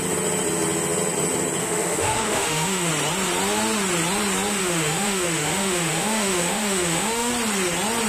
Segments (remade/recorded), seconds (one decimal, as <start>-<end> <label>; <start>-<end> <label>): 0.0-1.6 recorded; 1.6-2.9 remade; 2.9-4.6 recorded; 4.6-7.3 remade; 7.3-8.1 recorded